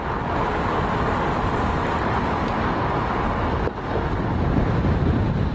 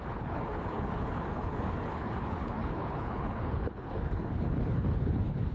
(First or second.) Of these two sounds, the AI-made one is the second